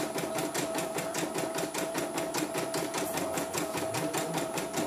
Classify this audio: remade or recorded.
recorded